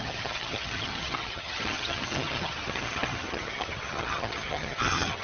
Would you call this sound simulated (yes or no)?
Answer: yes